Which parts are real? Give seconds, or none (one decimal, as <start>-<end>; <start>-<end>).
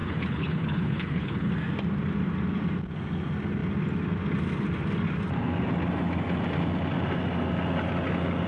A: 1.5-8.5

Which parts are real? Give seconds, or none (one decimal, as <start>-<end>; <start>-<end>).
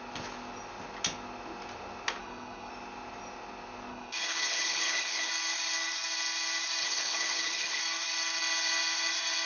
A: 0.0-2.2; 2.7-3.9; 5.3-6.8; 7.8-9.5